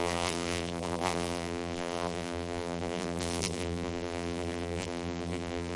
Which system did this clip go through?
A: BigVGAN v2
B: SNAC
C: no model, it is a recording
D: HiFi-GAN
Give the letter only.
A